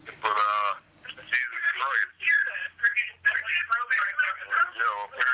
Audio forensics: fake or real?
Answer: real